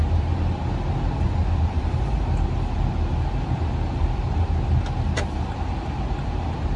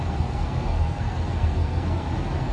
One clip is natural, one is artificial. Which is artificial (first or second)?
second